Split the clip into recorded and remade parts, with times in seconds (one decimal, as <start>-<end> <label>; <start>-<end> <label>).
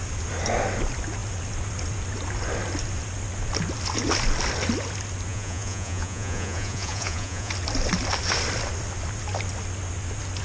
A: 0.0-5.3 recorded; 5.3-7.5 remade; 7.5-10.4 recorded